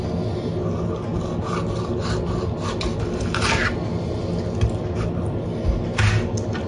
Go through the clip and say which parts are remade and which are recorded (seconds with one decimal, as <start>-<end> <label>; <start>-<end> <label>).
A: 0.0-6.7 recorded